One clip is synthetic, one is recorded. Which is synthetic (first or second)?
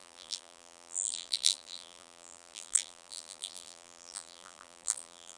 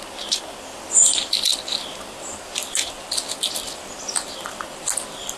first